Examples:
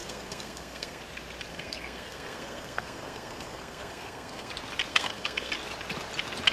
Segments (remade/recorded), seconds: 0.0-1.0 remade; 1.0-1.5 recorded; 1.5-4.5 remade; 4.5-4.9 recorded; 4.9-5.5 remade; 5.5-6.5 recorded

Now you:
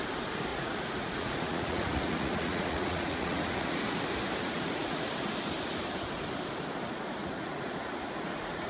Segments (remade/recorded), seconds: 0.0-0.5 recorded; 0.5-4.0 remade; 4.0-4.4 recorded; 4.4-5.1 remade; 5.1-7.2 recorded; 7.2-8.7 remade

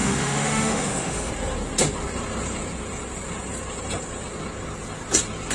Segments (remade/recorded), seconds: 0.0-1.3 remade; 1.3-5.5 recorded

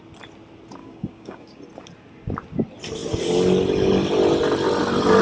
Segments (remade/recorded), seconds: 0.0-0.8 recorded; 0.8-1.6 remade; 1.6-5.2 recorded

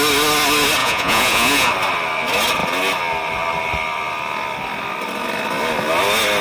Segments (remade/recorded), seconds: 0.0-0.8 recorded; 0.8-1.7 remade; 1.7-6.4 recorded

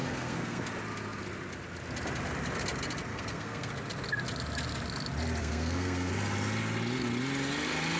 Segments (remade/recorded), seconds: 0.0-0.6 remade; 0.6-3.1 recorded; 3.1-3.7 remade; 3.7-5.4 recorded; 5.4-6.1 remade; 6.1-8.0 recorded

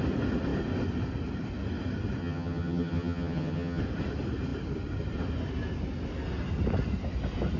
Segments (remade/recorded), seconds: 0.0-2.2 recorded; 2.2-3.8 remade; 3.8-7.6 recorded

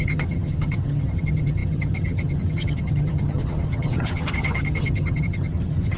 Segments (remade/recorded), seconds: 0.0-6.0 remade